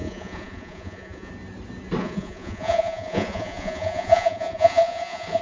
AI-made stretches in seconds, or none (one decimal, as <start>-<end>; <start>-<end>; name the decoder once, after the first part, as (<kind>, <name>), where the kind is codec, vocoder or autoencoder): 0.0-1.3 (vocoder, Vocos); 2.0-5.4